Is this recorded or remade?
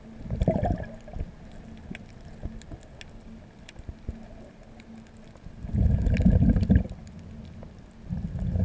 recorded